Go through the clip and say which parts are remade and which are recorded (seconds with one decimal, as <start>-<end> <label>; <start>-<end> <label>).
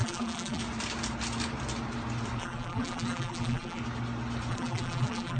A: 0.0-0.6 remade; 0.6-2.4 recorded; 2.4-3.8 remade; 3.8-4.5 recorded; 4.5-5.4 remade